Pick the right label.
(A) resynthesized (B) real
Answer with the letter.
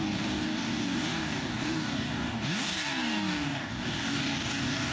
A